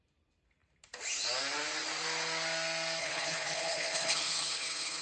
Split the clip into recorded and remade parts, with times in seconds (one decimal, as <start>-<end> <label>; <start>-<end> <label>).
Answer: 0.0-3.0 recorded; 3.0-5.0 remade